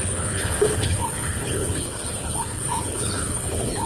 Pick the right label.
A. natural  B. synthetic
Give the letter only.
B